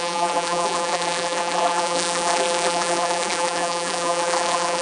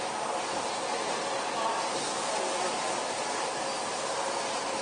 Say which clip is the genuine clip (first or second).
second